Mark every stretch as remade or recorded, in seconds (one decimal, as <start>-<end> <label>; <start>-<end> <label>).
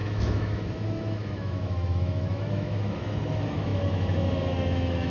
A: 0.0-5.1 remade